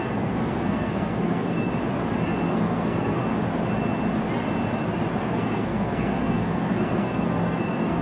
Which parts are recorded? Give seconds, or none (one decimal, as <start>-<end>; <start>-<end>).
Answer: 1.7-2.5; 3.2-5.2